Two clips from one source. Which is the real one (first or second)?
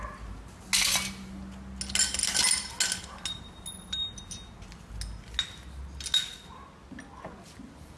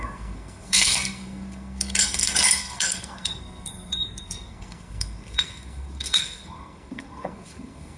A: first